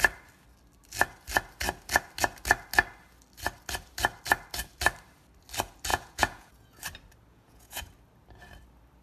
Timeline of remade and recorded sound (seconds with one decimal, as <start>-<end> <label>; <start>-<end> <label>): 0.0-5.9 recorded; 5.9-6.8 remade; 6.8-7.3 recorded; 7.3-7.9 remade; 7.9-9.0 recorded